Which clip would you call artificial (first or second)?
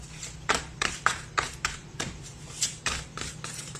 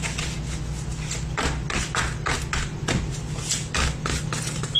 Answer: first